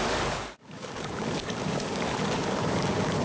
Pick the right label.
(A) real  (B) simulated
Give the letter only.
B